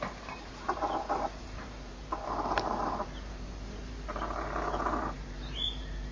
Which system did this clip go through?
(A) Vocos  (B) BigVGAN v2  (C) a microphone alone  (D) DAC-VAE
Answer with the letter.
B